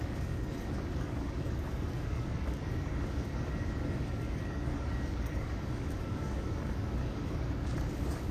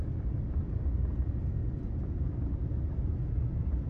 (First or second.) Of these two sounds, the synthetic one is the first